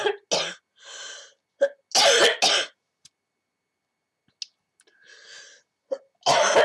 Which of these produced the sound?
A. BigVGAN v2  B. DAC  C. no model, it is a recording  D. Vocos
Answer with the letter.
C